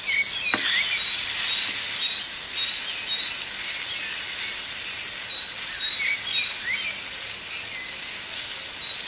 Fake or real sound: real